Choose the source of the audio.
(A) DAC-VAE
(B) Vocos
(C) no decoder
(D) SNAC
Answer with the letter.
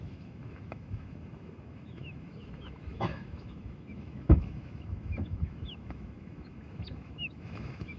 A